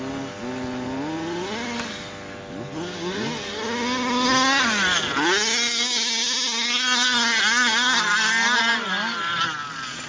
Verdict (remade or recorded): recorded